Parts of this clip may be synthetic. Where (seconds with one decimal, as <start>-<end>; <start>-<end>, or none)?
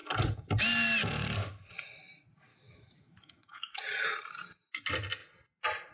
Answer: 2.5-3.8